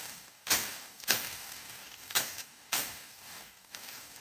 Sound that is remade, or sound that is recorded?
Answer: remade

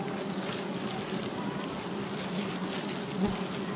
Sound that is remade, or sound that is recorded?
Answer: recorded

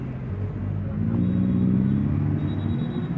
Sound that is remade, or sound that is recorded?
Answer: recorded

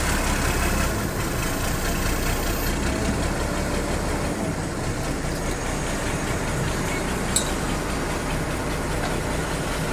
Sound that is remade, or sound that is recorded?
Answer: recorded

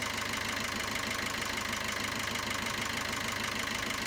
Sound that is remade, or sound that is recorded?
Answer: recorded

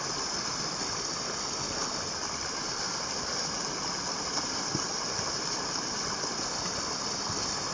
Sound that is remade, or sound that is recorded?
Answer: recorded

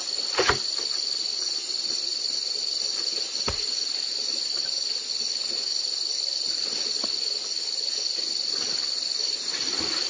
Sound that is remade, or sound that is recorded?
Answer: recorded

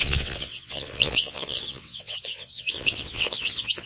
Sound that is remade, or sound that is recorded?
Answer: remade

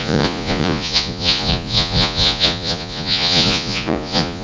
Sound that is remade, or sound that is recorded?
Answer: remade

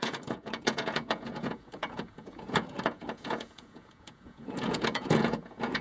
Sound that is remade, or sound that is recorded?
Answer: remade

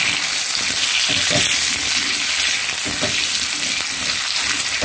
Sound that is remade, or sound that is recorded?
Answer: recorded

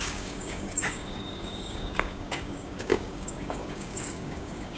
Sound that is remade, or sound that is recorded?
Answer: remade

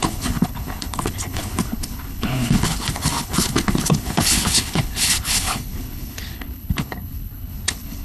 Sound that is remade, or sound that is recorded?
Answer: remade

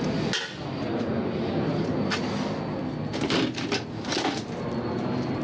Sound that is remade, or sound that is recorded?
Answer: recorded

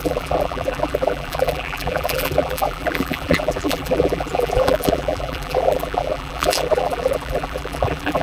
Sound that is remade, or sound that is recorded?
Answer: remade